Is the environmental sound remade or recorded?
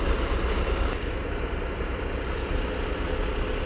recorded